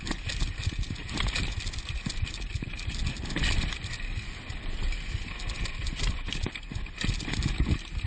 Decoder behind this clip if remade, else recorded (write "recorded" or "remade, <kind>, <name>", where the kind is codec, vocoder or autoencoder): recorded